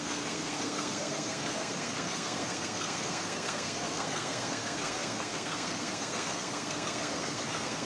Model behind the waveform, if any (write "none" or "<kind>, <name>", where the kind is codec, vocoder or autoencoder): codec, SNAC